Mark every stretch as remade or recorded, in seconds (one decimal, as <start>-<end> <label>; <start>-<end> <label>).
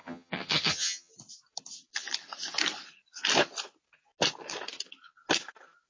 0.0-1.1 remade; 1.1-5.9 recorded